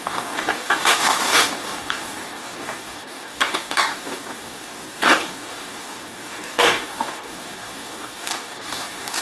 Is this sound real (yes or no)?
no